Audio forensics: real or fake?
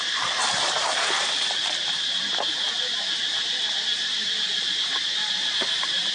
fake